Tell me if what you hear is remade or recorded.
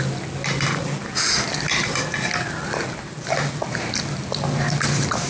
recorded